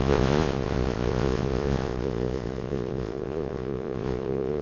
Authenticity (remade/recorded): remade